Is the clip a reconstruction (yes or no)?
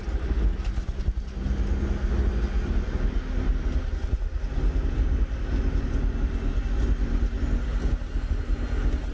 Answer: no